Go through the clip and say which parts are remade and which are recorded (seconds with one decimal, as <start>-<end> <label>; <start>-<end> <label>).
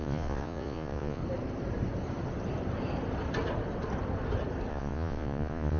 0.0-1.2 remade; 1.2-4.7 recorded; 4.7-5.8 remade